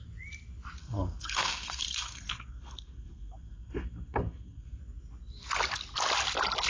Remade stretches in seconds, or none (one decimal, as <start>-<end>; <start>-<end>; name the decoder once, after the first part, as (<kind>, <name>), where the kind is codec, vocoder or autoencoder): 0.8-4.8 (codec, SNAC)